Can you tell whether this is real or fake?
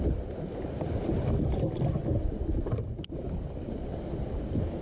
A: real